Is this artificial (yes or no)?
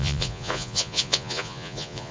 yes